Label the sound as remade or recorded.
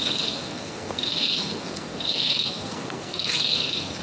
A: remade